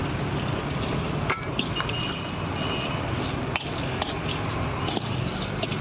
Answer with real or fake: real